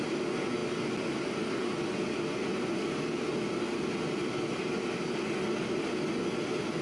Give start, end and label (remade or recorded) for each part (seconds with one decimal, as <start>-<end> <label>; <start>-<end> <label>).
0.0-6.8 recorded